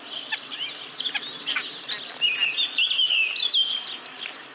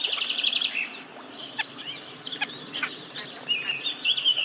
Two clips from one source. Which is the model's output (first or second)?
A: second